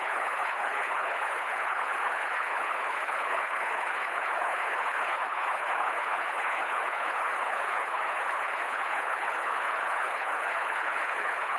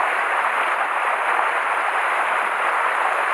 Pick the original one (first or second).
second